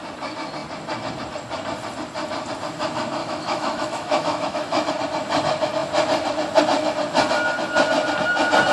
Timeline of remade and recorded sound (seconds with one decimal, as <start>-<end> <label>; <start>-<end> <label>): 0.0-3.2 recorded; 3.2-4.9 remade; 4.9-8.7 recorded